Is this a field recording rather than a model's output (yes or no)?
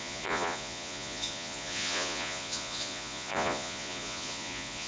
no